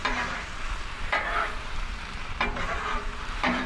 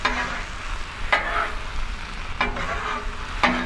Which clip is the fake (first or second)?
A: first